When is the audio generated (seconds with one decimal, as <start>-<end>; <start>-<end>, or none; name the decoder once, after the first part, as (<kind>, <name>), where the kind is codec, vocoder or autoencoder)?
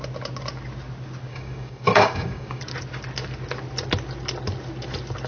1.3-2.6 (codec, DAC)